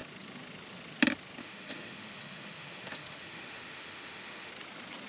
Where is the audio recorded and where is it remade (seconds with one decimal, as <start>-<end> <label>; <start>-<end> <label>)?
0.0-1.4 recorded; 1.4-4.5 remade; 4.5-5.1 recorded